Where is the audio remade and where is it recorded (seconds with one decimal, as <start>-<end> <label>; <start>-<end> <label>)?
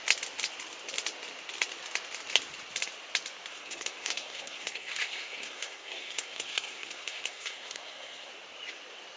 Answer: 0.0-3.5 recorded; 3.5-8.3 remade; 8.3-9.2 recorded